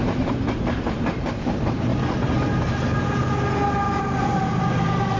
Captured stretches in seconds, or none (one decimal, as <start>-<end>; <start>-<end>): 1.9-4.0